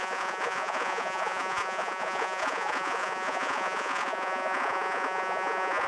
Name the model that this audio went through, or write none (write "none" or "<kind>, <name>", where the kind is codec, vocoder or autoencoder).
vocoder, Vocos